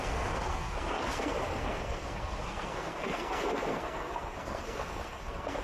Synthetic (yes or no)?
yes